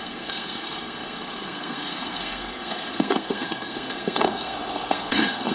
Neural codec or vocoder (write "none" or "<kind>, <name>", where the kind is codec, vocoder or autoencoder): codec, SNAC